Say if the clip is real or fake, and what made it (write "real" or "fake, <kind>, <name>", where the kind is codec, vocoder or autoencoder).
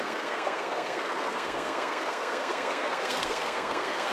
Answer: fake, codec, SNAC